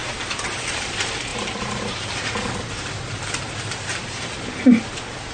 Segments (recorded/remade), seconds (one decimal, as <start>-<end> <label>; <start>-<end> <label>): 0.0-5.3 recorded